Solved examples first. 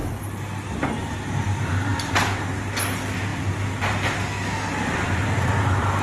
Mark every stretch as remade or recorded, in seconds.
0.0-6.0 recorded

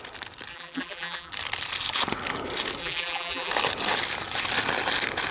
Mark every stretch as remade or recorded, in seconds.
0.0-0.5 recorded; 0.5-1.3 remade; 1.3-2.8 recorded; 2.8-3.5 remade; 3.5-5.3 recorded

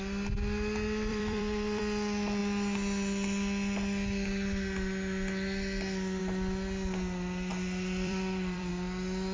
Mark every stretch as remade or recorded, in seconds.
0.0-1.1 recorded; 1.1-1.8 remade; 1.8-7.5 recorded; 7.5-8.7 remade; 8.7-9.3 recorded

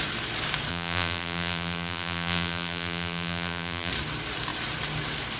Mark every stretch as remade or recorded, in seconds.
0.0-0.7 recorded; 0.7-3.9 remade; 3.9-5.4 recorded

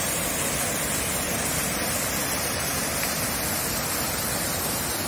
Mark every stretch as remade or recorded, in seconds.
0.0-5.1 recorded

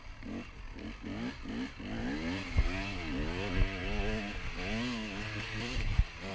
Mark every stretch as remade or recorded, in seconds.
0.0-6.3 recorded

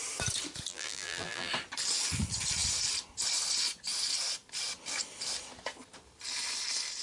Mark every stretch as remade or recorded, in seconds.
0.0-0.7 recorded; 0.7-1.5 remade; 1.5-7.0 recorded